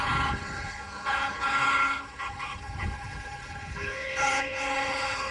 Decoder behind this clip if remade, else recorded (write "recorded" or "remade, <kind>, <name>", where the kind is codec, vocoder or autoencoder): remade, codec, HILCodec